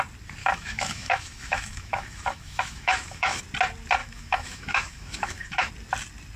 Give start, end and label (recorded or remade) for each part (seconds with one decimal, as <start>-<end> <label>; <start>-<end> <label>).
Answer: 0.0-0.4 recorded; 0.4-3.4 remade; 3.4-4.0 recorded; 4.0-5.7 remade; 5.7-6.4 recorded